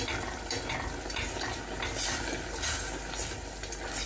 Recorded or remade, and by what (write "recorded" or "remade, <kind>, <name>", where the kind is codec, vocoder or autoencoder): recorded